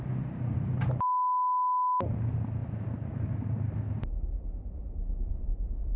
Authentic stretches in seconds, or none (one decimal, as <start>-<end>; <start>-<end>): 0.0-6.0